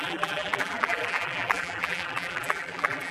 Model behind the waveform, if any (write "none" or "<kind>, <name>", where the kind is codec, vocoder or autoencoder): vocoder, BigVGAN v2